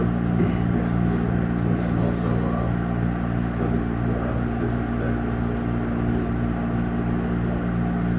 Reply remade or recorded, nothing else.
recorded